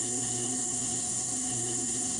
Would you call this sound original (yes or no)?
no